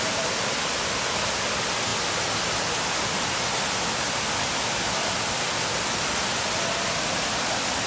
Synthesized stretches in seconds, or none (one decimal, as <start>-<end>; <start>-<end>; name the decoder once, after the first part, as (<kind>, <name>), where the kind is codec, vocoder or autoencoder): none